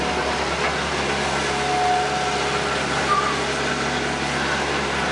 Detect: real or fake real